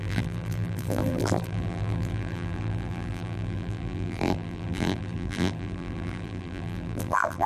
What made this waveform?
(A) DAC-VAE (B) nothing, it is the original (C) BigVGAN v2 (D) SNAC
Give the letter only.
C